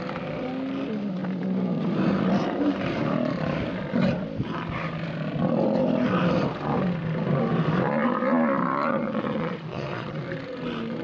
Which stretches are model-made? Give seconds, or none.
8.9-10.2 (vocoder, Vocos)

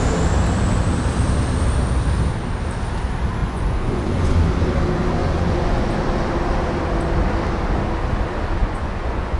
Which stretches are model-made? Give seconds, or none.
3.4-4.3 (vocoder, Vocos); 5.2-5.9; 8.6-9.4

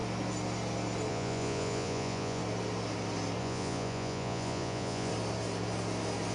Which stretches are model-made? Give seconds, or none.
1.1-2.4 (vocoder, Vocos); 3.4-5.1

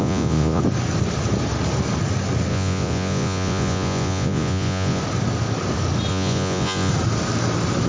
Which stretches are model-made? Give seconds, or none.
0.0-0.6 (vocoder, Vocos); 2.5-5.0; 6.1-6.9

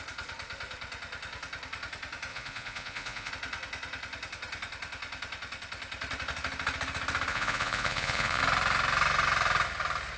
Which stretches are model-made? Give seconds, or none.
2.3-3.3 (vocoder, Vocos); 7.3-8.4

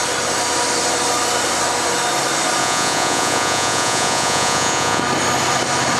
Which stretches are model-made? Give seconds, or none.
2.6-5.0 (vocoder, Vocos)

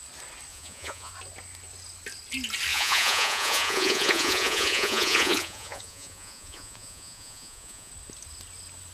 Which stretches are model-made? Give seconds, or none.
0.5-1.1 (vocoder, Vocos); 2.7-7.9